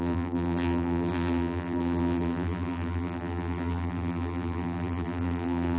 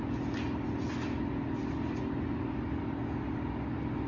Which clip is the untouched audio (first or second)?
second